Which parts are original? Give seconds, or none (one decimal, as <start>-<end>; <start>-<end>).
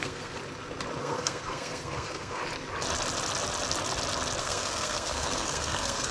0.4-1.0; 2.4-4.4